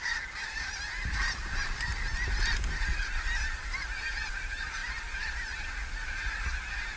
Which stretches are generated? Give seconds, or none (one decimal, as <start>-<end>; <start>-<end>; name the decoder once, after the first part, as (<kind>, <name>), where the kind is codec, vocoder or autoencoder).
0.0-1.9 (vocoder, BigVGAN v2); 4.3-7.0